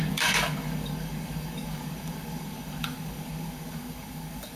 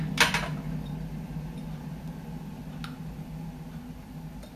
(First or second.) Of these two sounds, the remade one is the first